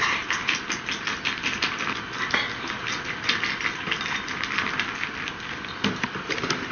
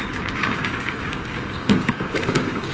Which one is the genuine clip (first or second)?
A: first